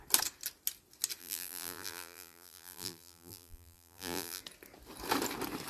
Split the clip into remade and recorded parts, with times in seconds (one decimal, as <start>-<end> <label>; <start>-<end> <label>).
0.0-1.2 recorded; 1.2-4.4 remade; 4.4-5.7 recorded